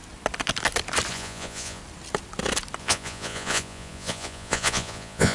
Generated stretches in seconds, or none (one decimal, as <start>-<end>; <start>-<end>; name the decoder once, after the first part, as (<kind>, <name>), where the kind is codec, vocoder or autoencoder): 1.1-1.8 (vocoder, Vocos); 2.8-5.3